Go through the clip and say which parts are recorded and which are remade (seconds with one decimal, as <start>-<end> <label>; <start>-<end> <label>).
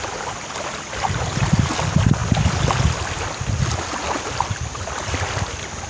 0.0-5.9 recorded